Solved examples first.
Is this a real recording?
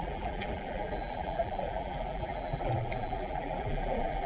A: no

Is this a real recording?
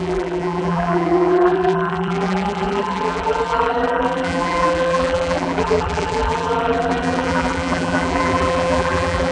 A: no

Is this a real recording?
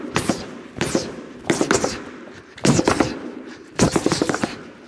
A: no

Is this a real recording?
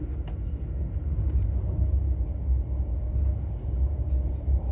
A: yes